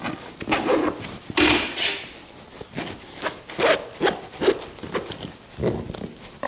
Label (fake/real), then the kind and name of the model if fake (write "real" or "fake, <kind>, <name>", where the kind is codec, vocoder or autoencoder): real